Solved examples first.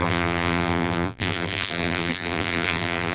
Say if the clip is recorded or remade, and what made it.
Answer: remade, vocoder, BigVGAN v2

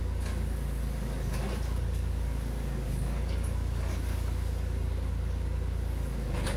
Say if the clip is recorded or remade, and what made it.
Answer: remade, codec, DAC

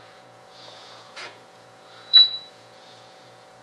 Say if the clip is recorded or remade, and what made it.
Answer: remade, vocoder, Vocos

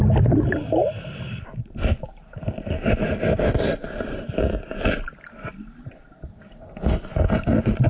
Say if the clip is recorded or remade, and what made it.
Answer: recorded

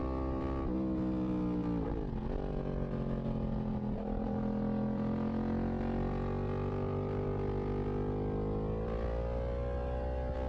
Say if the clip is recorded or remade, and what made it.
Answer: recorded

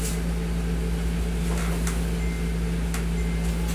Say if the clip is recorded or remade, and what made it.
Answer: recorded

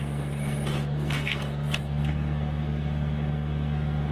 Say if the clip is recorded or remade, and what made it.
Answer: remade, codec, SNAC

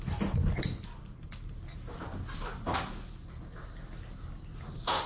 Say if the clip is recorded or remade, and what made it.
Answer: recorded